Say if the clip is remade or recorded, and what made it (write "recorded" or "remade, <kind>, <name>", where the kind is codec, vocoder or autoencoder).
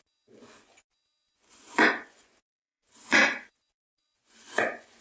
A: remade, vocoder, Vocos